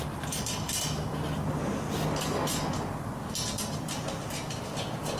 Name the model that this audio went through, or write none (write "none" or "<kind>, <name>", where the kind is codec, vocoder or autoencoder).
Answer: none